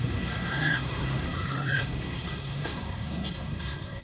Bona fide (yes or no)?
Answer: no